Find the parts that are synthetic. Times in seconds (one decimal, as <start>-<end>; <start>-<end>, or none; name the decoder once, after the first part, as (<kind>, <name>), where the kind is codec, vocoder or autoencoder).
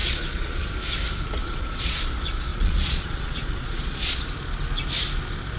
0.0-0.7 (vocoder, Vocos); 1.4-2.1; 2.5-4.3